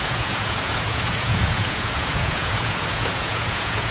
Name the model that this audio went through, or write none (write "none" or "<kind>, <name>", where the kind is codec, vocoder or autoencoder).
vocoder, Vocos